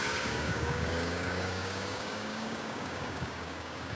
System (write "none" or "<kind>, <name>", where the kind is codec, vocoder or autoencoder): codec, DAC